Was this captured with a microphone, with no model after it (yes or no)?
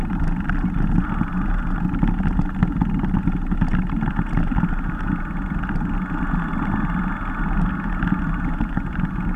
yes